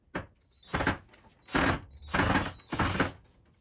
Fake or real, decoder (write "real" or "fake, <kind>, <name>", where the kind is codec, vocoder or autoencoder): real